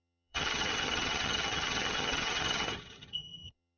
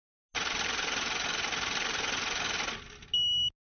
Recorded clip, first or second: second